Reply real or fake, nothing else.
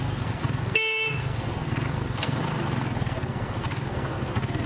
fake